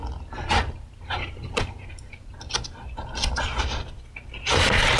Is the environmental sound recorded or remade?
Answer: recorded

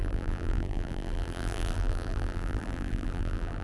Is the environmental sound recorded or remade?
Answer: remade